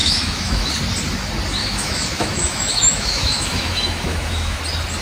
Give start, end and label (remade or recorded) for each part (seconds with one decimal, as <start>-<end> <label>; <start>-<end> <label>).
0.0-0.7 remade; 0.7-1.6 recorded; 1.6-4.6 remade; 4.6-5.0 recorded